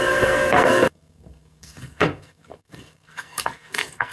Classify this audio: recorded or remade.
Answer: remade